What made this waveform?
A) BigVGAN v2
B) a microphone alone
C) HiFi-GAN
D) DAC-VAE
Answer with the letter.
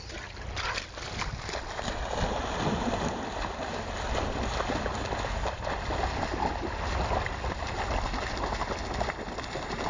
B